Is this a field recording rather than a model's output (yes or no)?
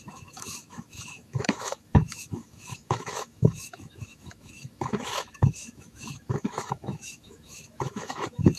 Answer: no